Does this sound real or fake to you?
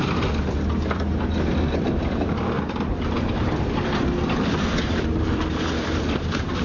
fake